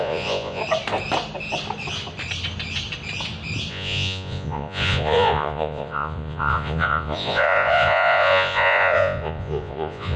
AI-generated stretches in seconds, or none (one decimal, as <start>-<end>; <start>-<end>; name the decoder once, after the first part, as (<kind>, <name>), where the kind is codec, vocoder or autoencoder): 0.0-0.6 (vocoder, Vocos); 3.7-10.2